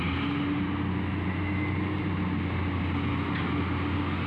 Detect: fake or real real